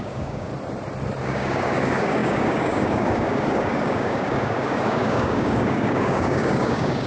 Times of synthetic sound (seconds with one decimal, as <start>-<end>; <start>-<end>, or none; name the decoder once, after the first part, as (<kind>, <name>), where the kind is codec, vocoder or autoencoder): 0.0-0.5 (codec, DAC); 1.2-7.1